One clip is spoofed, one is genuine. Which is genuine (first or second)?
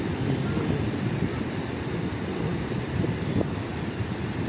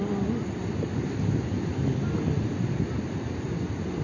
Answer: second